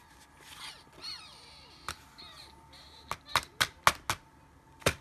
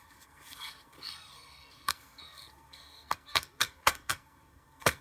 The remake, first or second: second